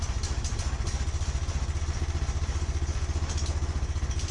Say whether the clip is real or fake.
real